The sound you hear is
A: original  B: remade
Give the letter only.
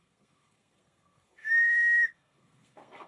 B